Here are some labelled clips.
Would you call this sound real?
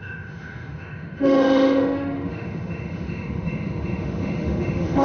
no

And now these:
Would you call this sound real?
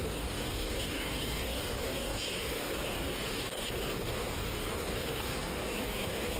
no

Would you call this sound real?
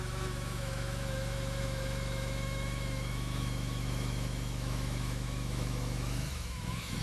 no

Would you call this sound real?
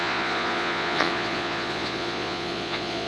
no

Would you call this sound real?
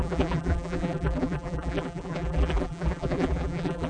no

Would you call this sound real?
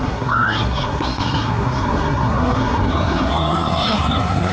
no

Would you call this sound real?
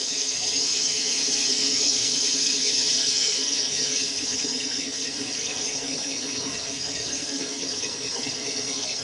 no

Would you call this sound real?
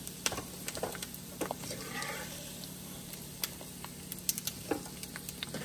yes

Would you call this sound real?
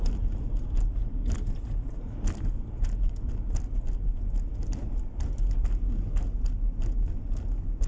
yes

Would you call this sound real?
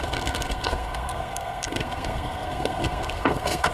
no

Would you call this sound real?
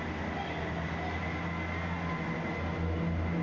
yes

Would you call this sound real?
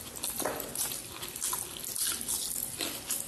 yes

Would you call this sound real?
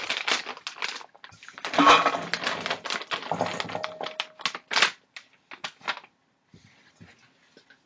yes